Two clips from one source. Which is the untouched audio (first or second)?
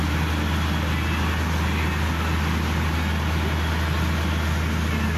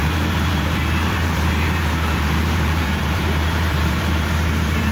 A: first